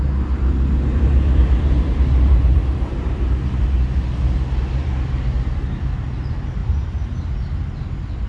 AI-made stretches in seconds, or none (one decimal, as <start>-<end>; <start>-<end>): 0.9-3.5; 6.6-7.1